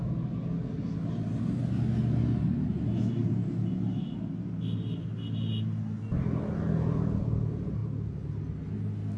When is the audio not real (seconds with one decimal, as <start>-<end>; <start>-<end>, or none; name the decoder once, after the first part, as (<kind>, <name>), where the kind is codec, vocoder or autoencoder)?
none